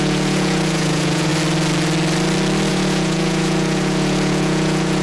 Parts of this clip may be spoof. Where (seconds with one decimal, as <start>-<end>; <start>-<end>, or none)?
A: 0.0-1.3; 2.7-5.0